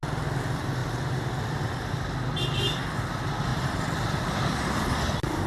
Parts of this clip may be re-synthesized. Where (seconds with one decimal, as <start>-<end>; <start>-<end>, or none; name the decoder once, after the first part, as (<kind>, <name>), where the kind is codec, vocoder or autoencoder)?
none